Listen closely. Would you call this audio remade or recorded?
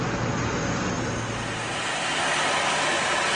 recorded